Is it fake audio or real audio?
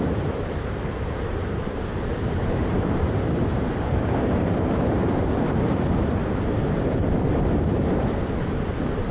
fake